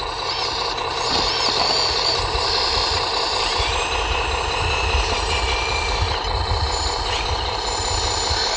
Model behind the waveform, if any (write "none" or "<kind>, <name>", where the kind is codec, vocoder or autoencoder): vocoder, BigVGAN v2